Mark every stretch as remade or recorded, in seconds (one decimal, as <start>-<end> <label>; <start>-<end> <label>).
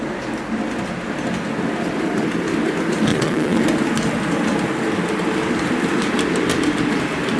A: 0.0-3.1 recorded; 3.1-3.6 remade; 3.6-7.4 recorded